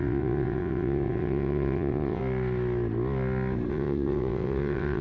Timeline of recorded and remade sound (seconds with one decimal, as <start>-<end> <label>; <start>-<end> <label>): 0.0-2.2 remade; 2.2-3.7 recorded; 3.7-5.0 remade